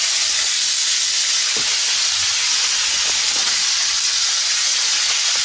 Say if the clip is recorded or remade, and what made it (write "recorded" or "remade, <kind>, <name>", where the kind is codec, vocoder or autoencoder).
recorded